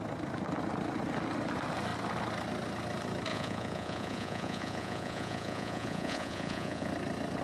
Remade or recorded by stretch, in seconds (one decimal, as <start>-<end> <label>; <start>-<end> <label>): 0.0-3.3 recorded; 3.3-6.9 remade; 6.9-7.4 recorded